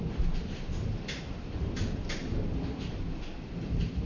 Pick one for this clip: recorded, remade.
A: recorded